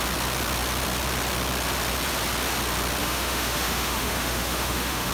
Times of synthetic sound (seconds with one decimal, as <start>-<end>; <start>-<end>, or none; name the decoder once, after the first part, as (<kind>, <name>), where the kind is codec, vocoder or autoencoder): 3.0-5.1 (autoencoder, DAC-VAE)